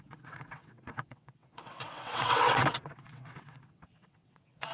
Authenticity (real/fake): fake